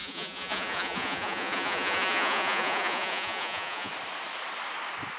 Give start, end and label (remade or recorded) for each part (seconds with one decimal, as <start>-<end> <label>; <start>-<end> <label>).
0.0-3.9 remade; 3.9-5.2 recorded